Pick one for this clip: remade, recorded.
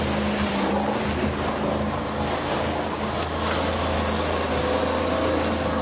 recorded